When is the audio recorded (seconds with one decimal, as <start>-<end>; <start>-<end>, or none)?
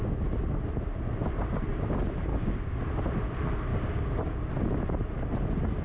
0.0-2.3; 2.8-3.7; 4.5-5.8